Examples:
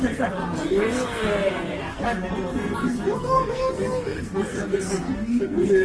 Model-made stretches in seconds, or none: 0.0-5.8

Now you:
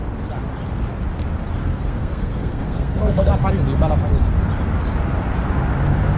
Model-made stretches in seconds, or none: 1.6-3.3

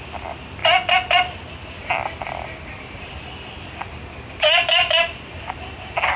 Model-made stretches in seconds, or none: none